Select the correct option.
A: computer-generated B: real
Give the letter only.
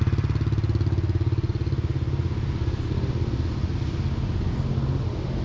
B